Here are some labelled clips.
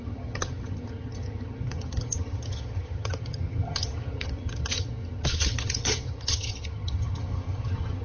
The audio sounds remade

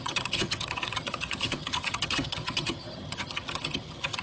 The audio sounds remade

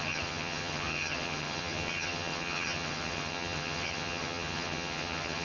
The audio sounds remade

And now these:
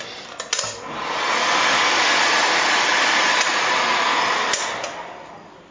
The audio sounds recorded